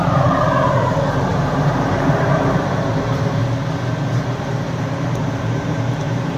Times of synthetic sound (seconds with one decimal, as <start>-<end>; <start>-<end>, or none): 0.0-3.4; 4.6-6.4